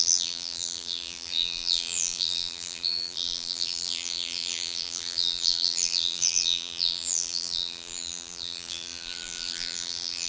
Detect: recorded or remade remade